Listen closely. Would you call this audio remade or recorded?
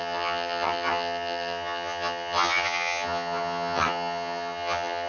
remade